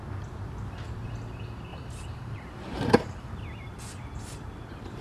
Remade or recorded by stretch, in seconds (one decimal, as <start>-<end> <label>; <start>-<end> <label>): 0.0-1.7 recorded; 1.7-3.3 remade; 3.3-5.0 recorded